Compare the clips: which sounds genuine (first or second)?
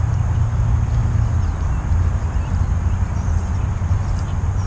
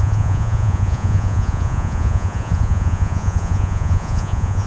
first